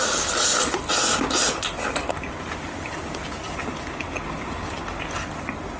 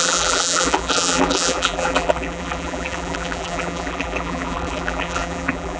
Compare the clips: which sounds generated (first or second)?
second